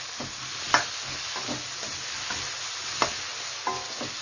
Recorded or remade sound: recorded